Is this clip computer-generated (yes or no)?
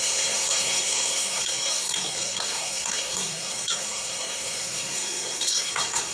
yes